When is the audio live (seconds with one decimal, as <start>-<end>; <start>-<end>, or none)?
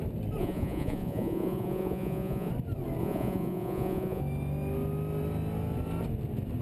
0.0-0.4; 2.5-3.0; 4.2-6.6